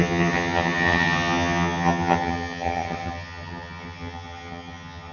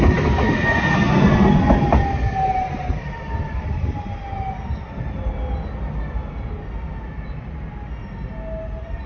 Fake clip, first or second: first